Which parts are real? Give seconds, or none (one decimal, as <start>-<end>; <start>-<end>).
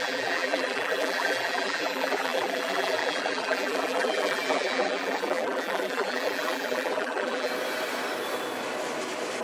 7.5-9.4